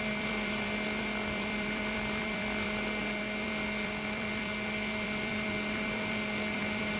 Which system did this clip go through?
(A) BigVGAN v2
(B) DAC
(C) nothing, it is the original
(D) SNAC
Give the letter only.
A